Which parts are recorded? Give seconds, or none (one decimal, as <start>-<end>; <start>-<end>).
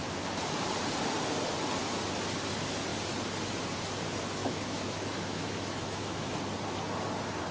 0.0-4.4; 6.4-7.5